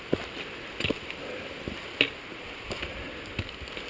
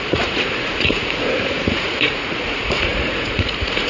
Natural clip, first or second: first